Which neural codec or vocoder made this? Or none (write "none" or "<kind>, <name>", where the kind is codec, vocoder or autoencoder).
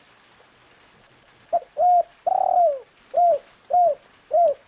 none